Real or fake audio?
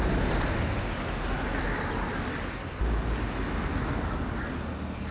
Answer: real